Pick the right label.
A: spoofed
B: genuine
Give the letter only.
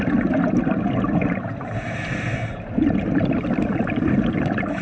B